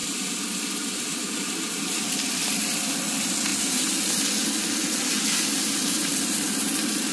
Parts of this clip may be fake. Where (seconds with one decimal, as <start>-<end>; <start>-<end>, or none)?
0.0-2.0